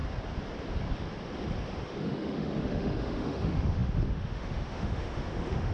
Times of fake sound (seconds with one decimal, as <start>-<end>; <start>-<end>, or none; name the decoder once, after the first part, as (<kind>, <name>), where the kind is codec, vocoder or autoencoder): 2.0-5.7 (autoencoder, DAC-VAE)

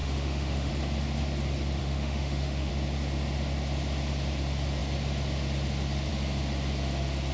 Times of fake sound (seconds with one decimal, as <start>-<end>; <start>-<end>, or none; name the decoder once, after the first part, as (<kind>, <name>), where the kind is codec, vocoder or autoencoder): 0.0-0.7 (autoencoder, DAC-VAE); 1.8-2.7

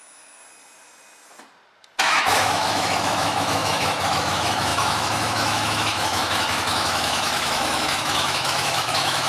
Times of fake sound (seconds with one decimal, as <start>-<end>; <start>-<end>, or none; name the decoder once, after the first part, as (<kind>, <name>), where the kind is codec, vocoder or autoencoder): 0.0-0.4 (autoencoder, DAC-VAE); 2.0-9.3

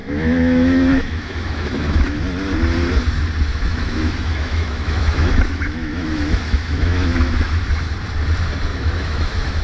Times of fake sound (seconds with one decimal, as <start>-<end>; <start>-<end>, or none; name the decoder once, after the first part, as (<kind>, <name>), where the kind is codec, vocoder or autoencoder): 0.0-2.2 (autoencoder, DAC-VAE); 3.5-7.7; 8.7-9.6

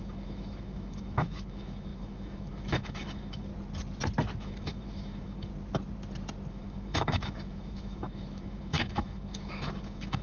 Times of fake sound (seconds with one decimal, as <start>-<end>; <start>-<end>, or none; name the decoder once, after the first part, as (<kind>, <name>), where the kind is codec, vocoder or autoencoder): 0.0-3.5 (autoencoder, DAC-VAE); 4.4-5.5; 6.5-10.2

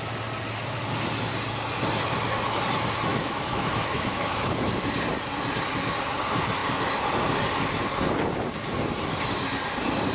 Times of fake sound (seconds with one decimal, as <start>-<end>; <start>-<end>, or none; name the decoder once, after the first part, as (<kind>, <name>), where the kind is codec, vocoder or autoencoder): 3.1-4.7 (autoencoder, DAC-VAE)

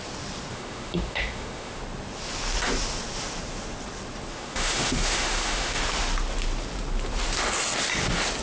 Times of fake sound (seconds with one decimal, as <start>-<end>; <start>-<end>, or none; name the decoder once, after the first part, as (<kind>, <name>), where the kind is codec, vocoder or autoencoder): 0.5-1.8 (autoencoder, DAC-VAE); 4.3-5.8